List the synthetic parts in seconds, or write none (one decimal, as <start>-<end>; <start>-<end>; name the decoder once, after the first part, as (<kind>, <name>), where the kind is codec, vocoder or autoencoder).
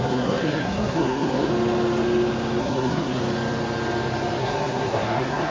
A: 0.0-1.5 (codec, SNAC); 2.6-3.2; 4.4-5.5